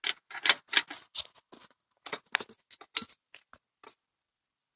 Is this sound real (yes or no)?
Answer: yes